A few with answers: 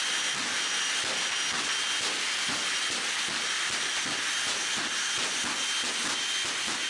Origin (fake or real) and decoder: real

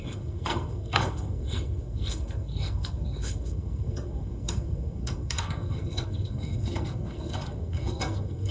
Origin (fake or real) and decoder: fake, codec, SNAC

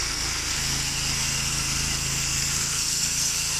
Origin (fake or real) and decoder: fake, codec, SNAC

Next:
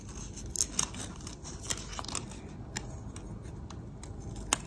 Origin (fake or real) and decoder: real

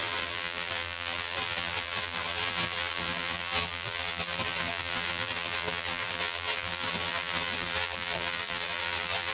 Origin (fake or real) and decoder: fake, vocoder, BigVGAN v2